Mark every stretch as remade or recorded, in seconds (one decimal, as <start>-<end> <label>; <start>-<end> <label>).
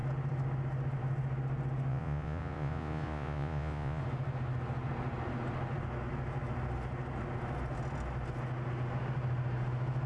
0.0-1.9 recorded; 1.9-4.0 remade; 4.0-10.1 recorded